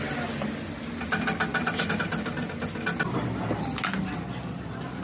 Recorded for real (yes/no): yes